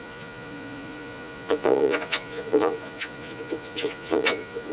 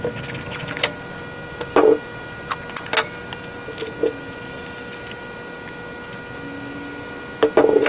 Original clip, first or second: second